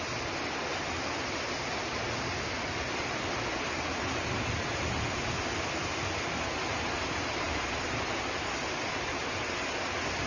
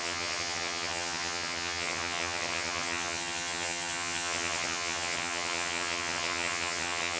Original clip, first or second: first